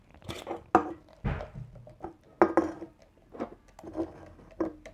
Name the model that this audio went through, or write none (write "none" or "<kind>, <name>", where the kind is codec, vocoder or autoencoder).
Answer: none